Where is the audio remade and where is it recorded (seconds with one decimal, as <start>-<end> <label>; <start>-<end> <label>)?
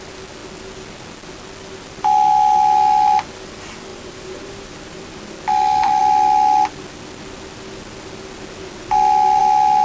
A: 0.0-3.9 recorded; 3.9-5.1 remade; 5.1-9.8 recorded